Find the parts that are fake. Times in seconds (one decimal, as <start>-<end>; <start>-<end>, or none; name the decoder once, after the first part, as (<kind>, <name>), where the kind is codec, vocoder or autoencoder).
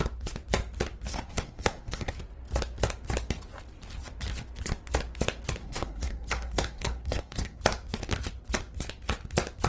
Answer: 1.1-2.1 (codec, SNAC); 5.6-7.6